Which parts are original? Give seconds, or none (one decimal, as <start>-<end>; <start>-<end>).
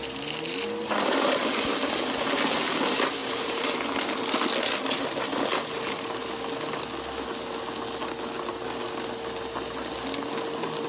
0.0-3.2; 3.7-5.5; 6.3-10.9